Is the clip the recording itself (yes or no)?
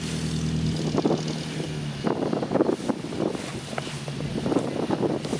yes